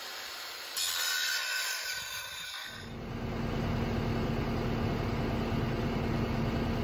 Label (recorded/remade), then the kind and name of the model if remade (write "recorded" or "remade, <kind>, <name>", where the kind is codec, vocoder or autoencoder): recorded